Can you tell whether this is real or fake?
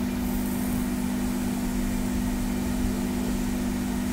real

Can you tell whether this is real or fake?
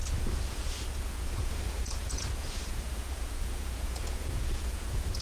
fake